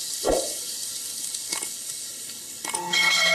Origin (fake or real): fake